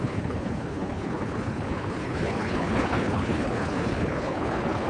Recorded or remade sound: remade